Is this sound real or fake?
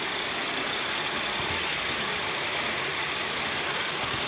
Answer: real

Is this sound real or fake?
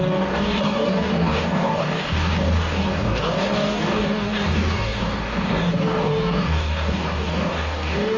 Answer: fake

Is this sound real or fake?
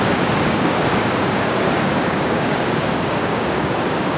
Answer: fake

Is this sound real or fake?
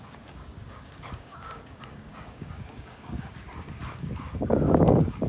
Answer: fake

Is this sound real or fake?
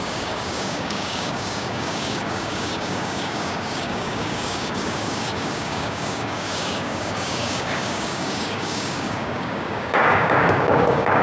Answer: fake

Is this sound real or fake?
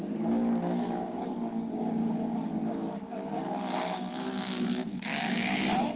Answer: fake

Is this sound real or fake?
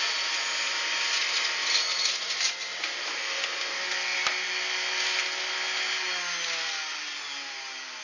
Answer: real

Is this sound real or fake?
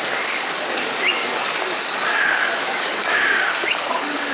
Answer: fake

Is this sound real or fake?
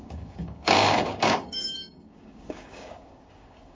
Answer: fake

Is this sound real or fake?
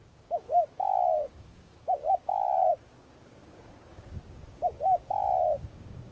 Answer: fake